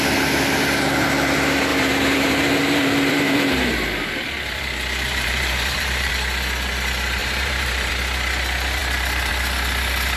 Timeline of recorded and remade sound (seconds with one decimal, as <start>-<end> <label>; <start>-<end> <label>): 0.0-1.7 recorded; 1.7-6.1 remade; 6.1-7.2 recorded; 7.2-7.9 remade; 7.9-10.2 recorded